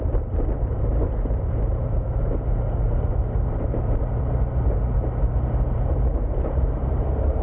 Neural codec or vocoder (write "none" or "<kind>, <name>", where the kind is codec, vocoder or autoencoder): vocoder, BigVGAN v2